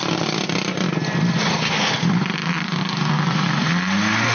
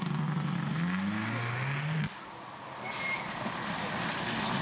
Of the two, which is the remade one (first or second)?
first